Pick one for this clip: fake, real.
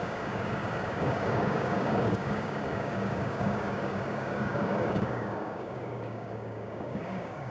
fake